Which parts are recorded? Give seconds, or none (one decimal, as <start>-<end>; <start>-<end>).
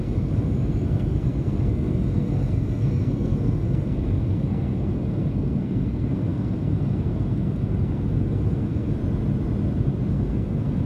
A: 9.0-10.1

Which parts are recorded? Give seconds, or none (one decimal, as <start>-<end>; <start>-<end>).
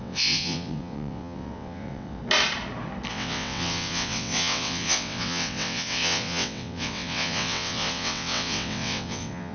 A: 2.2-3.1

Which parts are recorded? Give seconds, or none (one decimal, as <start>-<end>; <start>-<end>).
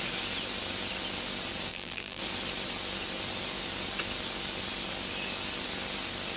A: 0.0-1.7; 2.2-6.4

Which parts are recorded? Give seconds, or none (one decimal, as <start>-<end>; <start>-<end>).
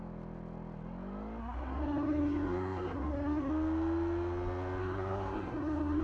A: 0.0-1.4; 3.5-4.8